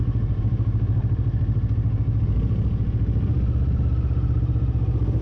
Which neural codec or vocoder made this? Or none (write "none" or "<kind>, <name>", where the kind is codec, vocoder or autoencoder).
none